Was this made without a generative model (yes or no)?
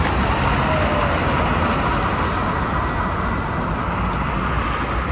yes